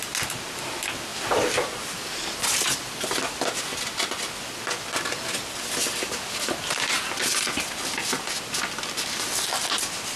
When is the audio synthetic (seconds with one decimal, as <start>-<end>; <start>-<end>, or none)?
none